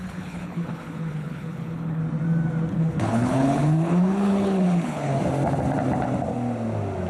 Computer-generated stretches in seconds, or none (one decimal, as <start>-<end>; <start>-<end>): 0.0-2.0; 2.7-5.2

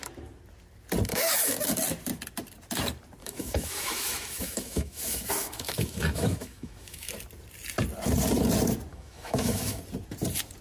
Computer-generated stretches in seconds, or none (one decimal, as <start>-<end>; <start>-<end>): 1.1-1.7; 3.2-7.1; 8.9-9.8

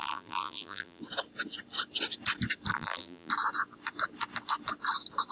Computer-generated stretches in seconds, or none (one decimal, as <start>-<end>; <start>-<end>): 0.0-1.0; 2.7-3.3

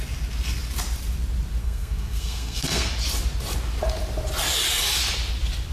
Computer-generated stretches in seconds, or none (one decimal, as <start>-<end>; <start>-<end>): 1.6-2.9

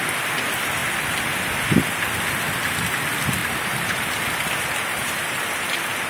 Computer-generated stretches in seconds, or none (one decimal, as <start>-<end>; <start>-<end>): 3.4-4.0; 4.9-5.4